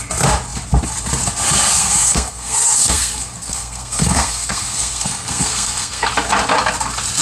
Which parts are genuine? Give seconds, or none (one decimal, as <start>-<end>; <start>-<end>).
0.0-1.8; 6.1-7.2